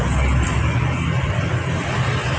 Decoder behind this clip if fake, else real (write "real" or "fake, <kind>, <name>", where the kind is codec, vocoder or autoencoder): fake, vocoder, BigVGAN v2